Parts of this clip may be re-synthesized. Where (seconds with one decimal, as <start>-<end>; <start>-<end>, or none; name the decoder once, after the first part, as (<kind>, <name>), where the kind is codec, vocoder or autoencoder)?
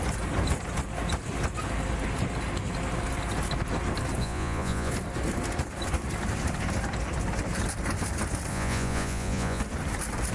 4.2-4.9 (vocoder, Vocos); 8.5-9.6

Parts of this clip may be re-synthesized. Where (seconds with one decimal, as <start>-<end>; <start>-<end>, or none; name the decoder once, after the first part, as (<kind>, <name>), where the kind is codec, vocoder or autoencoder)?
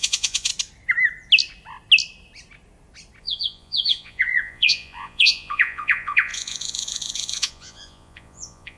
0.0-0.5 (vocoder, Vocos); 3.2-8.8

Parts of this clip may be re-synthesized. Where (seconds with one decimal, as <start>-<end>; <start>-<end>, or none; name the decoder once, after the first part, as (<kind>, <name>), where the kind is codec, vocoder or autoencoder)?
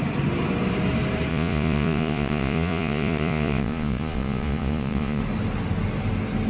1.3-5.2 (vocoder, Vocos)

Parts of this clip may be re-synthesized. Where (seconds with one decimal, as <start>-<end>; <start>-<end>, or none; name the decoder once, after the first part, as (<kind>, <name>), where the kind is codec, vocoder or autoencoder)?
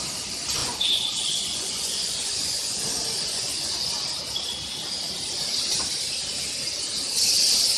0.6-3.9 (vocoder, Vocos)